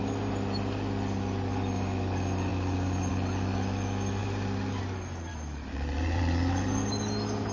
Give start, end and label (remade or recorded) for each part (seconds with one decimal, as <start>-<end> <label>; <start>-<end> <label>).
0.0-4.2 recorded; 4.2-4.8 remade; 4.8-5.3 recorded; 5.3-6.2 remade; 6.2-7.5 recorded